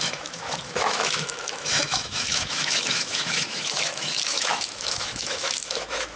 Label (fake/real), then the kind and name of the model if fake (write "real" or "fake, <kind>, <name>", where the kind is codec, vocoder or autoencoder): fake, autoencoder, DAC-VAE